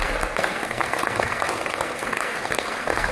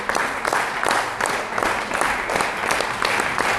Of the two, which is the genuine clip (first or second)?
second